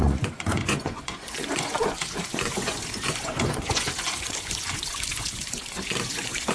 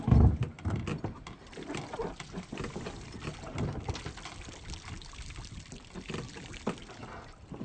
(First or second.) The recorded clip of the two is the second